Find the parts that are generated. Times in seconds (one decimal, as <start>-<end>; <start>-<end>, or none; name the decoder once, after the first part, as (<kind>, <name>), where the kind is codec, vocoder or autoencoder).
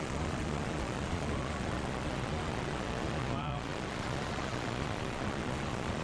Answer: 0.0-6.0 (vocoder, Vocos)